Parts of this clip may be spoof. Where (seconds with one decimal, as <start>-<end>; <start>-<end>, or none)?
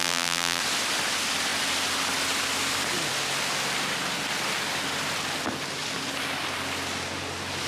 0.0-0.6